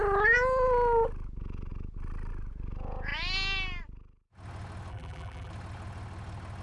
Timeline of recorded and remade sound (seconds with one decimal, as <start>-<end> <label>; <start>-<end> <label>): 0.0-4.9 recorded; 4.9-5.5 remade; 5.5-6.6 recorded